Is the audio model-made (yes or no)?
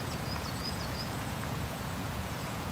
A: yes